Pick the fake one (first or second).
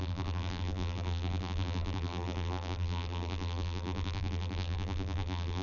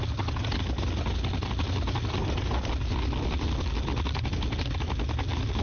first